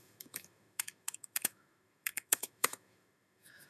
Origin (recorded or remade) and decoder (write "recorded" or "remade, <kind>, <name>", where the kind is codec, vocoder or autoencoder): remade, autoencoder, DAC-VAE